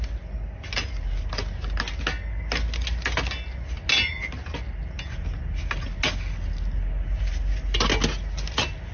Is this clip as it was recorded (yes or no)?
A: yes